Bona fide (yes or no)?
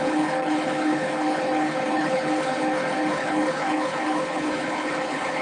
no